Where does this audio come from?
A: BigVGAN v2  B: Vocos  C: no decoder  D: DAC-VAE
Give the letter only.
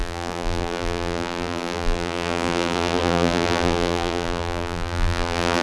A